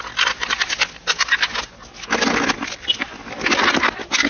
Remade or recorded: recorded